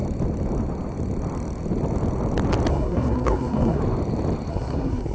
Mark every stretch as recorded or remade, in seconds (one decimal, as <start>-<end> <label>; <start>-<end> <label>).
0.0-2.7 recorded; 2.7-3.8 remade; 3.8-4.5 recorded; 4.5-5.1 remade